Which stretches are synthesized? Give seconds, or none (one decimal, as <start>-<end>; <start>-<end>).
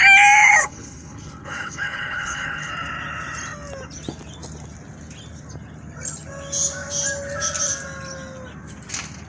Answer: 0.6-2.7